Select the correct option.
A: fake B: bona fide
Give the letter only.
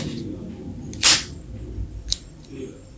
A